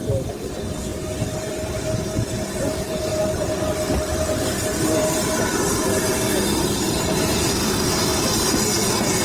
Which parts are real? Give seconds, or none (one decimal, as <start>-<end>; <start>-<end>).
0.0-9.2